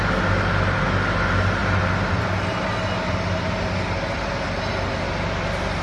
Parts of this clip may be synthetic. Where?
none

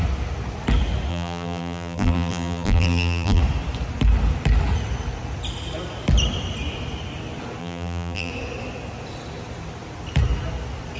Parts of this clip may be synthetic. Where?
1.1-3.4 (vocoder, BigVGAN v2); 7.6-8.3

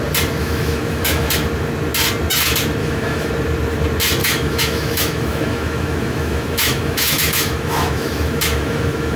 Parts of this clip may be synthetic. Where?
0.4-1.3 (autoencoder, DAC-VAE); 2.8-3.3; 4.2-9.2

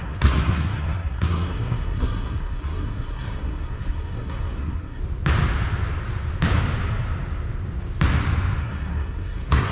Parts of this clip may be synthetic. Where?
0.0-5.0 (codec, SNAC); 8.6-9.7

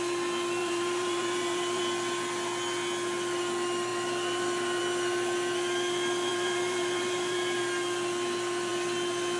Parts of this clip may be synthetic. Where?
0.6-1.8 (vocoder, BigVGAN v2); 6.3-7.6

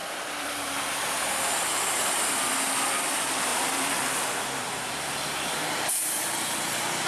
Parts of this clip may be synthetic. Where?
0.0-2.5 (vocoder, BigVGAN v2); 3.5-6.2

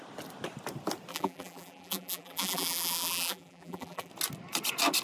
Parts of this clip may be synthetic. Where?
1.1-4.1 (vocoder, BigVGAN v2)

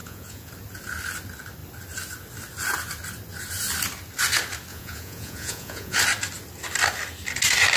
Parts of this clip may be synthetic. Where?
0.0-0.5 (vocoder, Vocos); 4.7-6.0